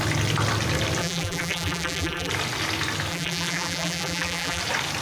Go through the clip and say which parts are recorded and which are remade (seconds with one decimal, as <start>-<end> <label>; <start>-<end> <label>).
0.0-1.0 recorded; 1.0-2.3 remade; 2.3-3.1 recorded; 3.1-4.6 remade; 4.6-5.0 recorded